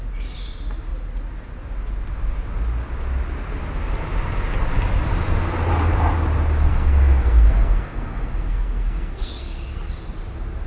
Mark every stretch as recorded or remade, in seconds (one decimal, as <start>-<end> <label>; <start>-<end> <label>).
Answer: 0.0-6.7 recorded; 6.7-10.0 remade; 10.0-10.7 recorded